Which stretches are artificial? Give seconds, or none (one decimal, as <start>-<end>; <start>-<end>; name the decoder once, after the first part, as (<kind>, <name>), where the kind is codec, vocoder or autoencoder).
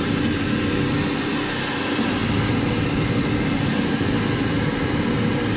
none